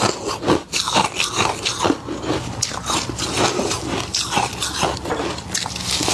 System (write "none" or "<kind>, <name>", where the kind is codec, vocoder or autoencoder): none